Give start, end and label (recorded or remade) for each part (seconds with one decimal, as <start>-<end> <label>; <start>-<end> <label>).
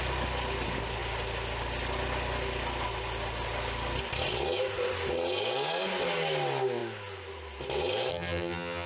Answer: 0.0-8.1 recorded; 8.1-8.9 remade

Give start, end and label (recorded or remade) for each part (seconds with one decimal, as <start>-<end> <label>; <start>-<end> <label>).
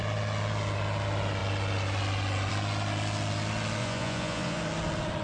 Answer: 0.0-3.8 recorded; 3.8-4.6 remade; 4.6-5.2 recorded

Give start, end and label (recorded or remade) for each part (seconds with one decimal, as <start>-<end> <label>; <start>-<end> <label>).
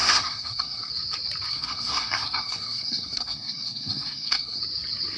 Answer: 0.0-0.9 remade; 0.9-1.5 recorded; 1.5-4.6 remade; 4.6-5.2 recorded